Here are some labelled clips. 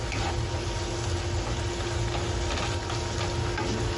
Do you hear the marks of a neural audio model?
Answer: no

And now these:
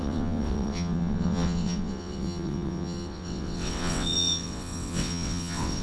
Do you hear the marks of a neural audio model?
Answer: yes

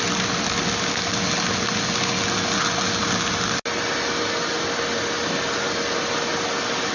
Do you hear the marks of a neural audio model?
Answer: no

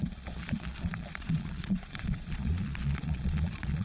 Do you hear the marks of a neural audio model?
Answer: yes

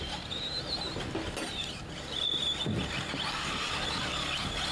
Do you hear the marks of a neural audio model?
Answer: no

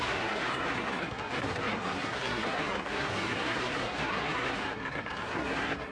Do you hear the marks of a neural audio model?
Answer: yes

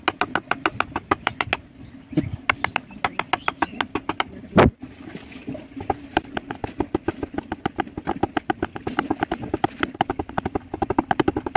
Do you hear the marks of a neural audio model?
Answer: no